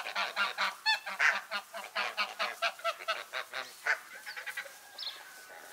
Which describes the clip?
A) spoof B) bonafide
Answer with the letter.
B